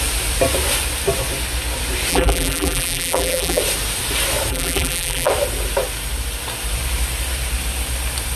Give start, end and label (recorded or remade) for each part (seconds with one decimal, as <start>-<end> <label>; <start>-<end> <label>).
0.0-2.1 recorded; 2.1-3.6 remade; 3.6-4.5 recorded; 4.5-5.3 remade; 5.3-8.4 recorded